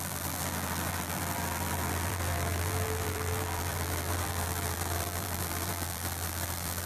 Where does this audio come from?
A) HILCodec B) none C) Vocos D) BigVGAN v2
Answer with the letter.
D